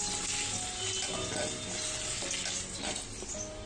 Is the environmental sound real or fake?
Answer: real